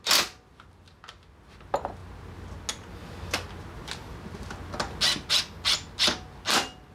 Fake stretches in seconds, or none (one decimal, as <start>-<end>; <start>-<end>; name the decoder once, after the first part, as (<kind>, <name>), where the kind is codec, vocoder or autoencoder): none